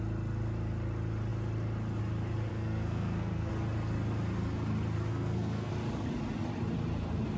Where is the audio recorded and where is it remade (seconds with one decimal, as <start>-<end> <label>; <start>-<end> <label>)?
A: 0.0-2.5 recorded; 2.5-3.5 remade; 3.5-5.1 recorded; 5.1-5.7 remade; 5.7-7.4 recorded